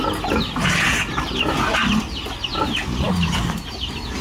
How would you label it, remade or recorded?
recorded